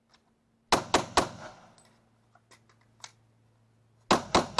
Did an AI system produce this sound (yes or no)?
no